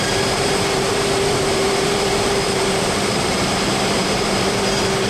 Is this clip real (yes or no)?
no